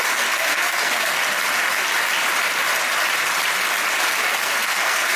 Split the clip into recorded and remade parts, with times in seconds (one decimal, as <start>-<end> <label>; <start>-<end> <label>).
0.0-1.2 remade; 1.2-4.3 recorded; 4.3-5.2 remade